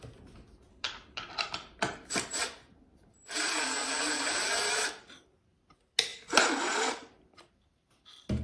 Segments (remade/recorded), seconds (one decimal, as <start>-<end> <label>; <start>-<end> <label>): 0.0-0.7 recorded; 0.7-1.3 remade; 1.3-8.4 recorded